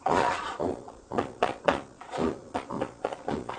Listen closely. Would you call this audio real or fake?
fake